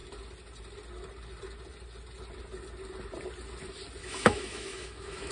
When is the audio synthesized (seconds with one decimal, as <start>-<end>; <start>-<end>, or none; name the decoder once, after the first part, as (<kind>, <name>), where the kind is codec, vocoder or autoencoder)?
4.0-5.3 (autoencoder, DAC-VAE)